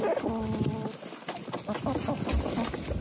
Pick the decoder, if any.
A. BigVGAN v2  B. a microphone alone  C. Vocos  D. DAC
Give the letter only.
B